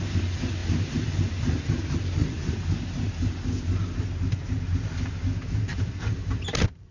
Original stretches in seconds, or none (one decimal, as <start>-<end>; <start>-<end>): 0.0-0.6; 1.7-2.2; 3.3-5.7